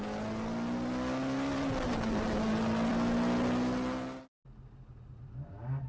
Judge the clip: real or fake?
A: real